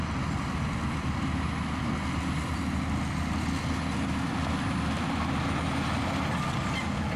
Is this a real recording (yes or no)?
yes